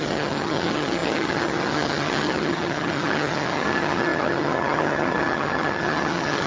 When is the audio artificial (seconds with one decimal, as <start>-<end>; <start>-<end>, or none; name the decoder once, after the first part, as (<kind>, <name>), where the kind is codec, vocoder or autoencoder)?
0.0-6.5 (vocoder, HiFi-GAN)